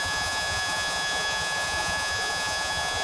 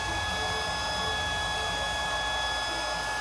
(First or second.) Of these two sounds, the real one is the second